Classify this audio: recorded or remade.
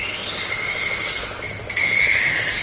recorded